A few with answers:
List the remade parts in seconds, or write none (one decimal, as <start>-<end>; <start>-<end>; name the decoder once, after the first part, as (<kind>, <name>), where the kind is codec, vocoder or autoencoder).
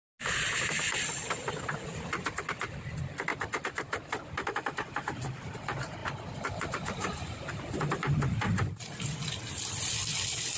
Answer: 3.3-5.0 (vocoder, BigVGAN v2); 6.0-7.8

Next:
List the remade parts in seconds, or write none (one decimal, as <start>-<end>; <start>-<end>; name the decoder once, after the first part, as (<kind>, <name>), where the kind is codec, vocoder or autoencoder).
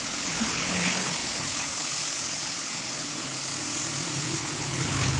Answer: 0.0-3.5 (codec, HILCodec); 4.2-5.2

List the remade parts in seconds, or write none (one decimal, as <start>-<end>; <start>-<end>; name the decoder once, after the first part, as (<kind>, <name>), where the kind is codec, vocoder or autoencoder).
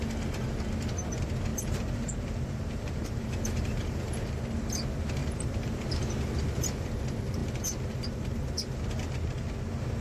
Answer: 1.5-4.2 (vocoder, BigVGAN v2); 5.2-5.9; 7.4-8.8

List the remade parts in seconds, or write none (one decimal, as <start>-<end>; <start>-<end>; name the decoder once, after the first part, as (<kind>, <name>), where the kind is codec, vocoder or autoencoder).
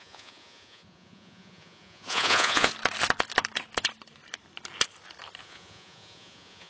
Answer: 0.0-2.7 (vocoder, Vocos); 5.4-6.7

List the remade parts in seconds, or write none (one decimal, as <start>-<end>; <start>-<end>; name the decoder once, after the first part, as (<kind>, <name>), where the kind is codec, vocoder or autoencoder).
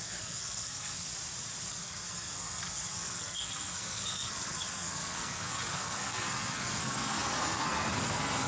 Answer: 0.0-1.1 (codec, SNAC); 1.7-8.5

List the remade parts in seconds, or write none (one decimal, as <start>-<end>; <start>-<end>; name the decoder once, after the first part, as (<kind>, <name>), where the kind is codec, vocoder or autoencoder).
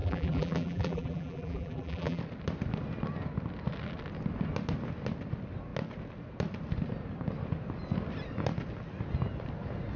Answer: 0.0-2.2 (vocoder, BigVGAN v2)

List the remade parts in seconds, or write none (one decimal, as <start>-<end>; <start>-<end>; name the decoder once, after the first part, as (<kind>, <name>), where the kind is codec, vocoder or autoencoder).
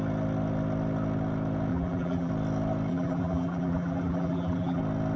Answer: 1.7-2.3 (vocoder, BigVGAN v2); 2.9-4.8